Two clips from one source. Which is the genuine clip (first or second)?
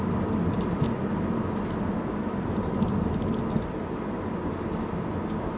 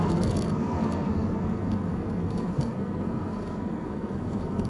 first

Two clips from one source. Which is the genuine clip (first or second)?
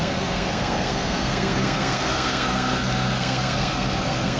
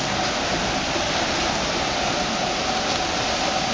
second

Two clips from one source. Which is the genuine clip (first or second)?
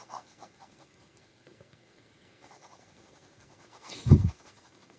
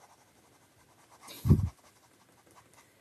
second